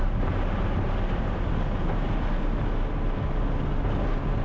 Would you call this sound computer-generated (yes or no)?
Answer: no